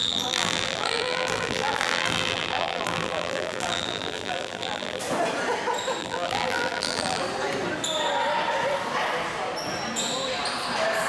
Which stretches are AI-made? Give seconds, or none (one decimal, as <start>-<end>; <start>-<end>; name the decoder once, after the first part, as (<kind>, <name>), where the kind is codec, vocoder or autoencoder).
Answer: 0.0-5.0 (vocoder, BigVGAN v2); 6.0-7.2